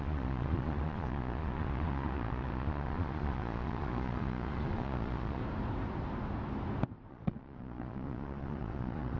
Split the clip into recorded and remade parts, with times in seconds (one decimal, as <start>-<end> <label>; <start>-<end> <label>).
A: 0.0-5.4 remade; 5.4-7.1 recorded; 7.1-9.2 remade